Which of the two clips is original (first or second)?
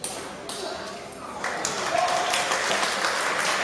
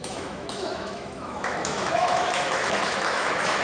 first